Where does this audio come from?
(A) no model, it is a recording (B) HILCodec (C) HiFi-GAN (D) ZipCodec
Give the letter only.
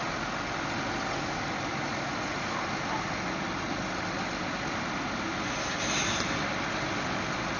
A